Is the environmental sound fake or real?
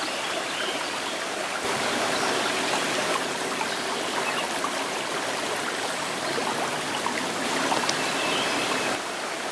real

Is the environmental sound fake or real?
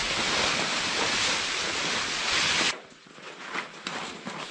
real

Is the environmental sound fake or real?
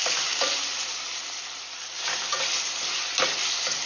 real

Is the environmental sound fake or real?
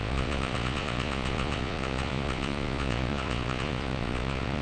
fake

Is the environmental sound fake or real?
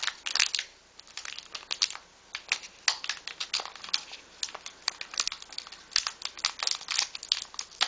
real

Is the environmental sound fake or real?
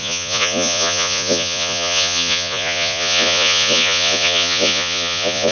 fake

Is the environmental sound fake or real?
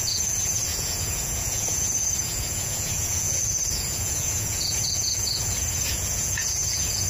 fake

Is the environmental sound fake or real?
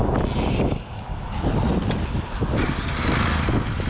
real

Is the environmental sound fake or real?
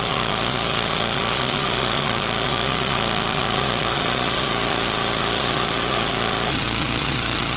fake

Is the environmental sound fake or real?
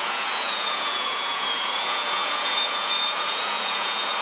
fake